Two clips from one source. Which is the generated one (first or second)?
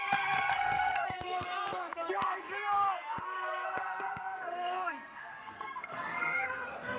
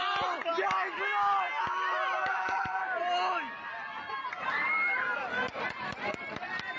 first